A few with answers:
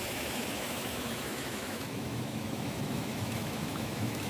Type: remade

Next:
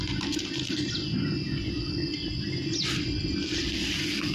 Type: recorded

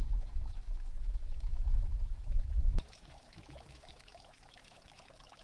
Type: remade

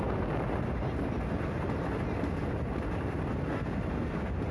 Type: recorded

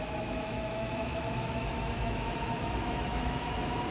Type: remade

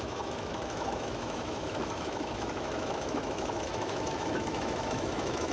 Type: remade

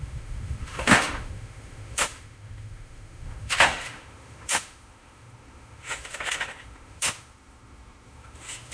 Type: remade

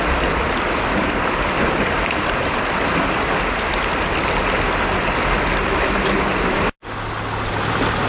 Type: recorded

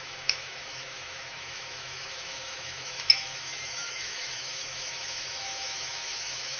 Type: remade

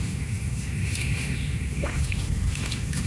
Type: remade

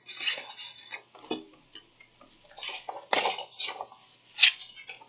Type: recorded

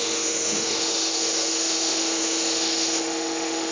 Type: remade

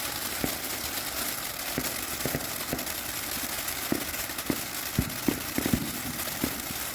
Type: recorded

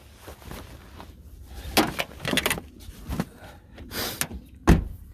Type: recorded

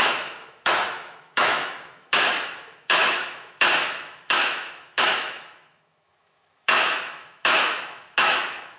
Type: remade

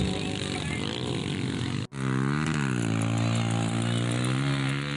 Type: recorded